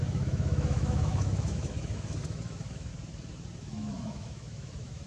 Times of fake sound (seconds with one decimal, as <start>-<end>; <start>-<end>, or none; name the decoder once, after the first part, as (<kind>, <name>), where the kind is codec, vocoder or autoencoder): 0.0-2.9 (autoencoder, DAC-VAE); 3.6-5.1